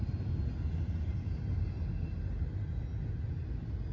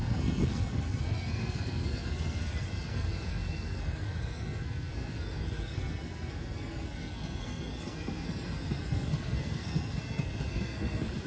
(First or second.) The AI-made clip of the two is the second